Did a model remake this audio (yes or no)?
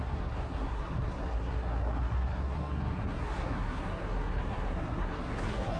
yes